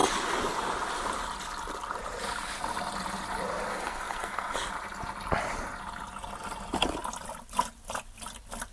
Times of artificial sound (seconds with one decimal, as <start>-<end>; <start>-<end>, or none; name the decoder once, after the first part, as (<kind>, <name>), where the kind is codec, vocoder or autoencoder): 3.7-4.7 (codec, SNAC)